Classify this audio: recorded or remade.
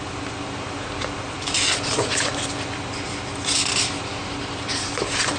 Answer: remade